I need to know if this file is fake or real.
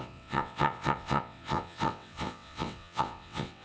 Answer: fake